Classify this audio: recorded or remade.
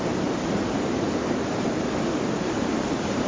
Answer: remade